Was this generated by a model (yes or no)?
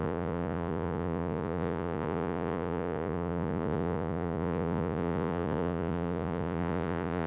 yes